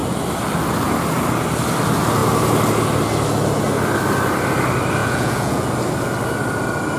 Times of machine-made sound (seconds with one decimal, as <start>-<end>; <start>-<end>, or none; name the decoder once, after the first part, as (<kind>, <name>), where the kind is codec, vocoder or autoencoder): 5.0-5.7 (vocoder, Vocos)